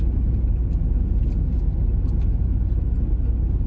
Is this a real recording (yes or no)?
yes